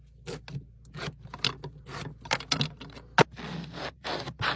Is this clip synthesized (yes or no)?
no